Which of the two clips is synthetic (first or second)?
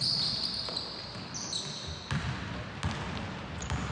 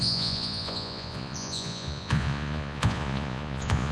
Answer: second